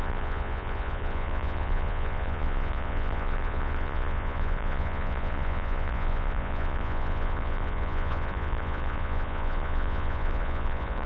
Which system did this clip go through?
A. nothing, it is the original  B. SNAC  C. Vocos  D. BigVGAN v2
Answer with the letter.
C